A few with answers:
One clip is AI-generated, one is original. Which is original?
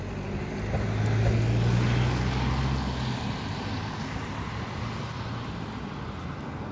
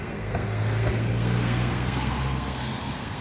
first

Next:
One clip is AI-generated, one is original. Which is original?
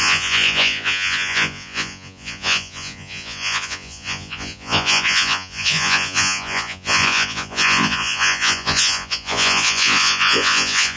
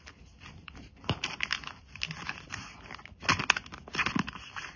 second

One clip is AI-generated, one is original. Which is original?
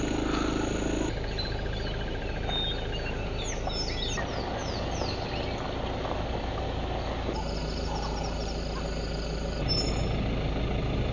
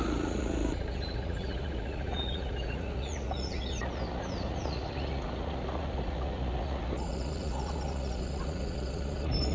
first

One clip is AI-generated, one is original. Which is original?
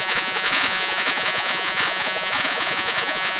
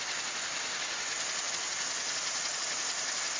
second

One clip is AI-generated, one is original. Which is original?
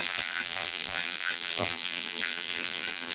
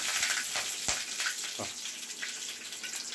second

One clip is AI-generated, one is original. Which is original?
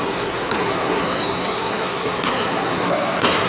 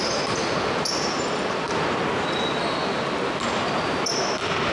second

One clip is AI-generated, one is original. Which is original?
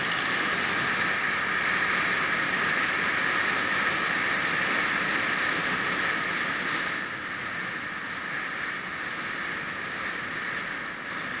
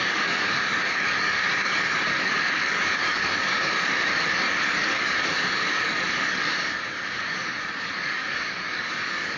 first